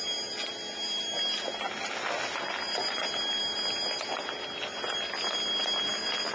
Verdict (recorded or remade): recorded